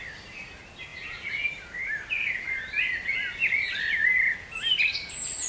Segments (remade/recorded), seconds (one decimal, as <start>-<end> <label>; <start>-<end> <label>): 0.0-5.5 recorded